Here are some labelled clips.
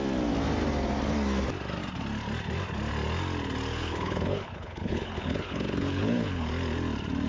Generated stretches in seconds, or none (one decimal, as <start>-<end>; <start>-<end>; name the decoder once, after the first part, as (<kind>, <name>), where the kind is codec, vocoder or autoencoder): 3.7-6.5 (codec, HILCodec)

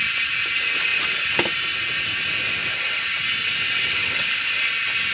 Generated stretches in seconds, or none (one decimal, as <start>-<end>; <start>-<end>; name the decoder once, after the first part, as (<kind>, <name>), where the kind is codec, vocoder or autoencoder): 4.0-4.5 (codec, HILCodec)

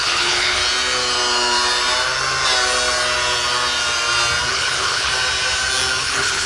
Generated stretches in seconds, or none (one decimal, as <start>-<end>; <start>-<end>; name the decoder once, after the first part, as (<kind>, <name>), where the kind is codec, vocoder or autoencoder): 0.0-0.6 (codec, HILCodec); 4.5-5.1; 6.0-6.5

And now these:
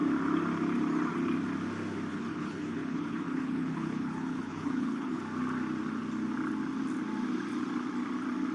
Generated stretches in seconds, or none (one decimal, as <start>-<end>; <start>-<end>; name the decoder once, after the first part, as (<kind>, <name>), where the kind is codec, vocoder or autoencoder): 2.1-5.2 (codec, HILCodec)

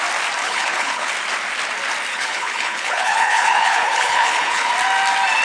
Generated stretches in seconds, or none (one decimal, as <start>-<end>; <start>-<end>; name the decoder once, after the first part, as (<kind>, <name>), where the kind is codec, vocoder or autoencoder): 0.4-1.1 (codec, HILCodec); 2.1-4.7

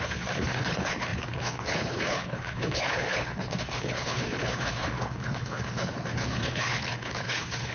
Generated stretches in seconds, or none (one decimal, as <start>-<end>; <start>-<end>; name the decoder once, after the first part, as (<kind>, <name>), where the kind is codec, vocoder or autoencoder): 0.0-7.7 (codec, HILCodec)

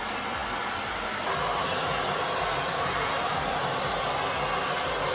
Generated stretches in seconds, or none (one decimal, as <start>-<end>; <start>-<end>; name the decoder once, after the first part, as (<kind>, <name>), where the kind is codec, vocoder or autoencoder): none